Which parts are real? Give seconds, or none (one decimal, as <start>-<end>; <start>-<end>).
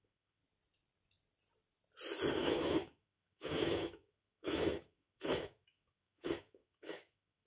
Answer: 0.4-2.3